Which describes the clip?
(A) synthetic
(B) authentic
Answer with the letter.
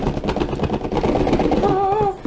B